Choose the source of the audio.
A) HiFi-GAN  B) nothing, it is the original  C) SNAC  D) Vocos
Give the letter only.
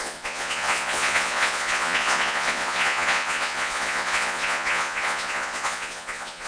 D